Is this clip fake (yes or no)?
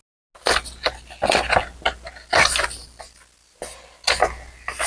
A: no